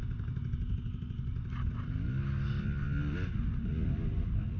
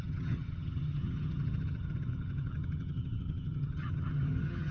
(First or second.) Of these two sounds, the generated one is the second